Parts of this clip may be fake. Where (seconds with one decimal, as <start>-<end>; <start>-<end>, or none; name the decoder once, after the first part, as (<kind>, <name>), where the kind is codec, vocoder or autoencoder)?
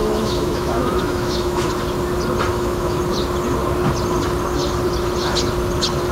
0.0-1.7 (autoencoder, DAC-VAE); 2.5-3.0